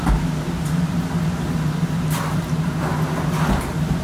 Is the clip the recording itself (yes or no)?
yes